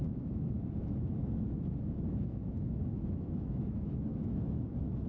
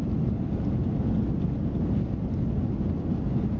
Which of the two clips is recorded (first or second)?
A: second